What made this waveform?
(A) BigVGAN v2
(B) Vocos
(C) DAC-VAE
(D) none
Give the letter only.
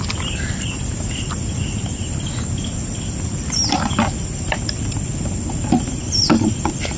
D